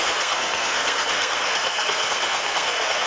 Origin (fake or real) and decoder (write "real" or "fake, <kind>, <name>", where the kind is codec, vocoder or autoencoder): fake, codec, SNAC